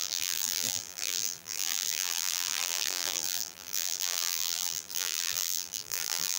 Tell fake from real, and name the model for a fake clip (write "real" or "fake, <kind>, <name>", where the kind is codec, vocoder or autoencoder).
fake, vocoder, BigVGAN v2